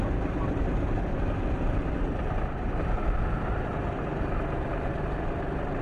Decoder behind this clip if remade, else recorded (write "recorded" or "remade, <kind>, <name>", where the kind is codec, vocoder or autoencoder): recorded